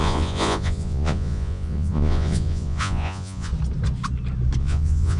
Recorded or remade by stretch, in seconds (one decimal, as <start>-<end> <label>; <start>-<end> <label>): 0.0-3.5 remade; 3.5-4.6 recorded; 4.6-5.2 remade